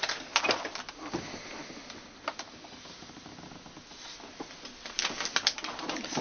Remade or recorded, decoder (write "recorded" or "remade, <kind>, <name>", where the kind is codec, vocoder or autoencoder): recorded